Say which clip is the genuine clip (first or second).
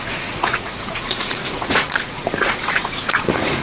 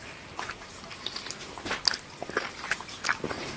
second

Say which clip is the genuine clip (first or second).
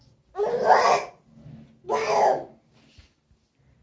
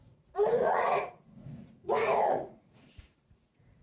first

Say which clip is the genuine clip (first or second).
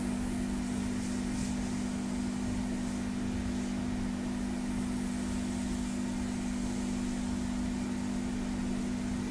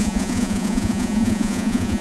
first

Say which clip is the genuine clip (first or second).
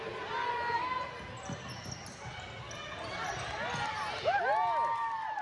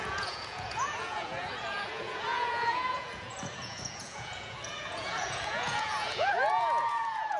first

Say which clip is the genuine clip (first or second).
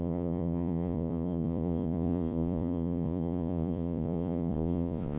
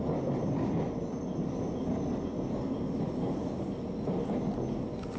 second